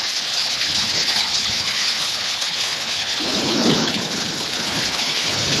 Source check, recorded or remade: remade